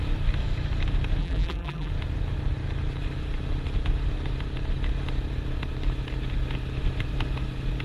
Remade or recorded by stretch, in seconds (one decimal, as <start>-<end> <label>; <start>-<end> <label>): 0.0-1.2 recorded; 1.2-1.9 remade; 1.9-7.8 recorded